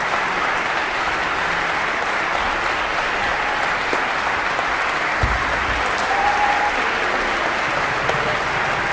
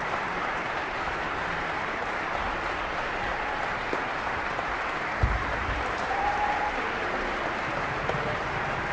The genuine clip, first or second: first